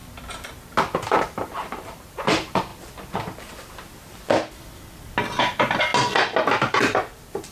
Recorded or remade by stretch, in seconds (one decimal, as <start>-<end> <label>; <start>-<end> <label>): 0.0-1.2 recorded; 1.2-2.7 remade; 2.7-5.4 recorded; 5.4-5.9 remade; 5.9-6.6 recorded; 6.6-7.5 remade

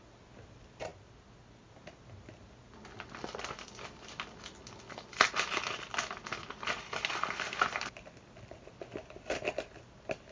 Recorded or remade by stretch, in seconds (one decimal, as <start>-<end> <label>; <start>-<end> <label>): 0.0-10.3 recorded

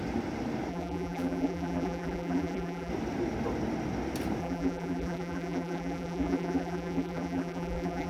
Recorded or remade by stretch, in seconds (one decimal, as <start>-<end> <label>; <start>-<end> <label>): 0.0-0.7 recorded; 0.7-2.9 remade; 2.9-4.4 recorded; 4.4-8.1 remade